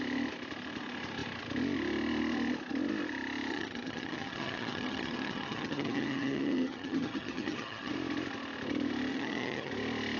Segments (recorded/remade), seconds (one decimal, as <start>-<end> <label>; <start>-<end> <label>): 0.0-3.5 recorded; 3.5-7.9 remade; 7.9-9.1 recorded; 9.1-9.7 remade; 9.7-10.2 recorded

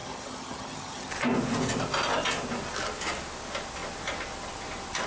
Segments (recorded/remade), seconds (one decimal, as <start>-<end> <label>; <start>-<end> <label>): 0.0-1.1 remade; 1.1-5.1 recorded

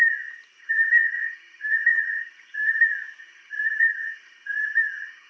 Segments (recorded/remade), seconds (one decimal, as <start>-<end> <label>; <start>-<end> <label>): 0.0-0.6 recorded; 0.6-2.8 remade; 2.8-3.2 recorded; 3.2-5.3 remade

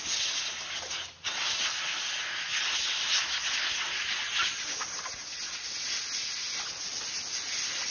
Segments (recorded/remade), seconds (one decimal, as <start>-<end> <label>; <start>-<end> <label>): 0.0-7.9 recorded

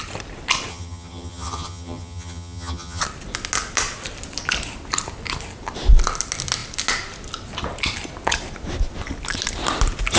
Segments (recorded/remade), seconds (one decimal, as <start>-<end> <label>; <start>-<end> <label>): 0.0-0.7 recorded; 0.7-3.0 remade; 3.0-10.2 recorded

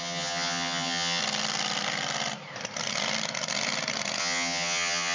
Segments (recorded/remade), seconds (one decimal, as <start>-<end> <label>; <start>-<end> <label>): 0.0-1.2 remade; 1.2-4.2 recorded; 4.2-5.1 remade

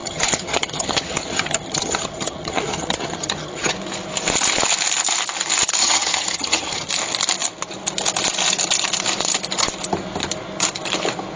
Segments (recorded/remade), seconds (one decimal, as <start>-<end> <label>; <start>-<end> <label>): 0.0-3.7 remade; 3.7-5.8 recorded; 5.8-6.9 remade; 6.9-11.4 recorded

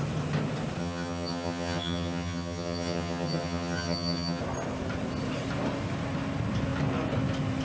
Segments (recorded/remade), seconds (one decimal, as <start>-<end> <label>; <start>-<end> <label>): 0.0-0.8 recorded; 0.8-4.4 remade; 4.4-7.6 recorded